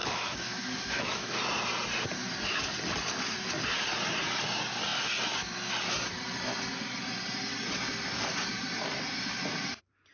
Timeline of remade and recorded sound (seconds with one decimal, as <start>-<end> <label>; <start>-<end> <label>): 0.0-1.4 remade; 1.4-10.1 recorded